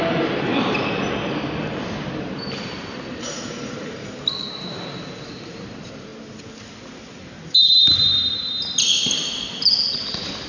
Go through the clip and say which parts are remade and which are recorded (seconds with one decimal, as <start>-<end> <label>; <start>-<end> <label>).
0.0-0.5 remade; 0.5-1.6 recorded; 1.6-6.1 remade; 6.1-9.5 recorded; 9.5-10.5 remade